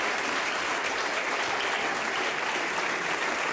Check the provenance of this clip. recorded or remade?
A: recorded